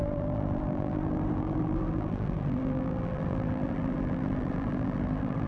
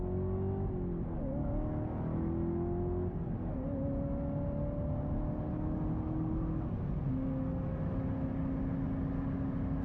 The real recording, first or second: second